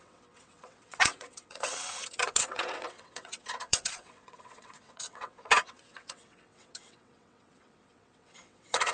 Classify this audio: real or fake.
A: fake